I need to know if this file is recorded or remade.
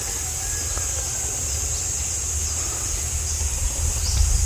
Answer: recorded